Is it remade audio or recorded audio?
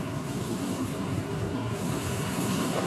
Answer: remade